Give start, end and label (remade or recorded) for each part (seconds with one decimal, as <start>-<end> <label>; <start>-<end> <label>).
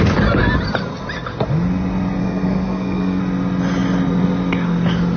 0.0-2.2 recorded; 2.2-3.2 remade; 3.2-5.2 recorded